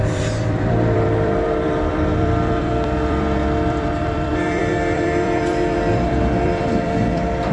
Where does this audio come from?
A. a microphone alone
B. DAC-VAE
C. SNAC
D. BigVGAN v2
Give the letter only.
D